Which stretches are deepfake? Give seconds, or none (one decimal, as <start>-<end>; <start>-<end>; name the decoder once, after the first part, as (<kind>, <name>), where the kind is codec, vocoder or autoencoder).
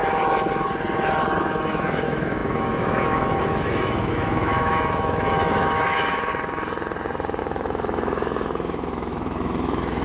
1.4-6.3 (autoencoder, DAC-VAE); 7.4-10.0